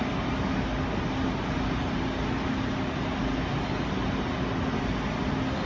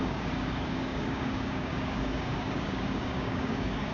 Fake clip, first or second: second